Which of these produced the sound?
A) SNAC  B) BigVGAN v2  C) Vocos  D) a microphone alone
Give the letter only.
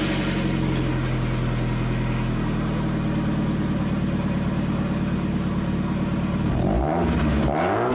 D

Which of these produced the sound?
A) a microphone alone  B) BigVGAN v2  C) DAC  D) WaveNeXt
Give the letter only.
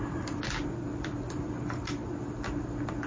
A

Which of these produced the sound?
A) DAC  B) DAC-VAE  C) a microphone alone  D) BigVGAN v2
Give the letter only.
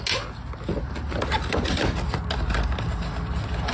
C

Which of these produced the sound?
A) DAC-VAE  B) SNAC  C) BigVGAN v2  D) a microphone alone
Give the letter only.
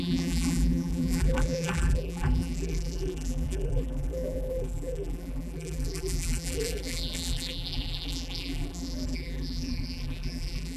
C